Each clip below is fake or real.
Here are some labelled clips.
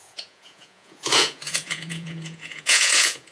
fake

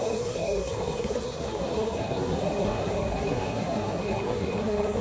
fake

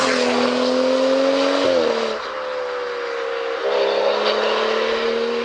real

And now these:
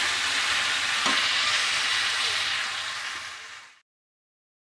real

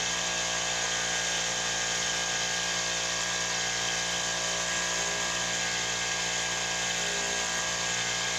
real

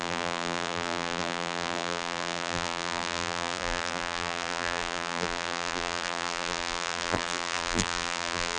fake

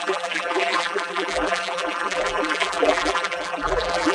fake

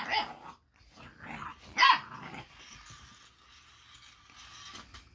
real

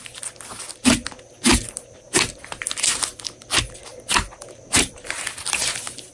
real